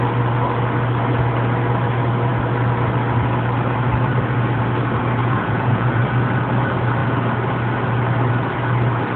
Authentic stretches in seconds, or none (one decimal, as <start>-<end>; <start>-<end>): 0.0-5.2; 6.0-9.2

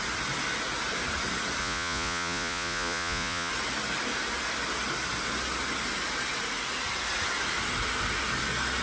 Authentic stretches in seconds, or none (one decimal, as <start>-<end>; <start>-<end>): 0.0-1.6; 3.5-8.8